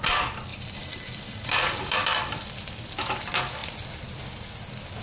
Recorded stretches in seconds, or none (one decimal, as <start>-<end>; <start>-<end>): 0.0-0.5; 2.5-5.0

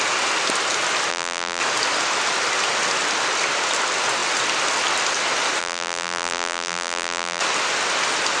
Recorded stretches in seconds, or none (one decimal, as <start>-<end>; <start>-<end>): 0.0-1.1; 1.6-5.6; 7.4-8.4

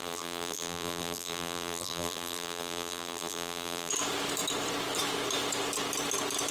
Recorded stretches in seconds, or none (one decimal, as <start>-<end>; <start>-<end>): 3.9-6.5

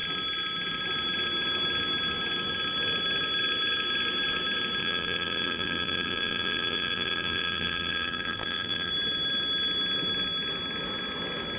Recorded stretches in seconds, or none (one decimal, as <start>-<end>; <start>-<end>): 0.0-4.8; 8.9-11.6